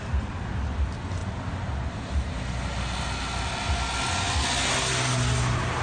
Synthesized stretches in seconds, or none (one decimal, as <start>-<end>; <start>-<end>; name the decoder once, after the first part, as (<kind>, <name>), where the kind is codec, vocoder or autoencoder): none